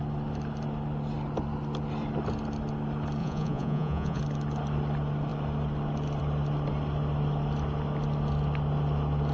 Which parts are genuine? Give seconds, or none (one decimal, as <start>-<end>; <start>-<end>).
0.0-3.2; 4.2-9.3